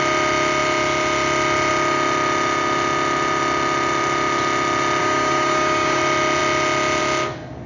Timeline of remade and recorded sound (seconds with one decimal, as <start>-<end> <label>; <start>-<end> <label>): 0.0-5.0 recorded; 5.0-6.0 remade; 6.0-7.7 recorded